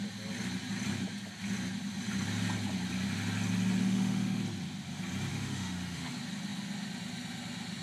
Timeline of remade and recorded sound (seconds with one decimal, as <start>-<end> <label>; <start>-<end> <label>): 0.0-3.8 recorded; 3.8-4.4 remade; 4.4-5.3 recorded; 5.3-6.1 remade; 6.1-7.8 recorded